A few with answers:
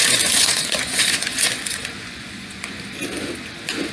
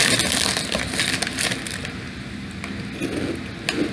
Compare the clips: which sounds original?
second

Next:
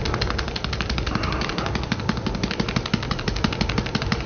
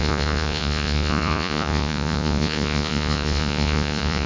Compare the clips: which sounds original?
first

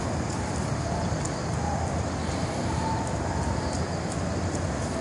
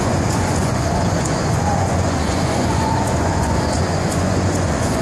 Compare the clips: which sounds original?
first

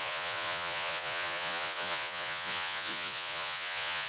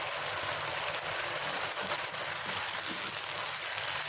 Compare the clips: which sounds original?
second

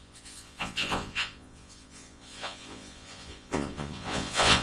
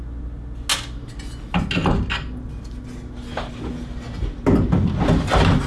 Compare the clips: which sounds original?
second